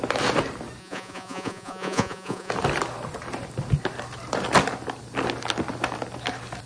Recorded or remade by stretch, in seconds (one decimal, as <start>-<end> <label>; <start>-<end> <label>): 0.0-0.8 recorded; 0.8-2.5 remade; 2.5-6.7 recorded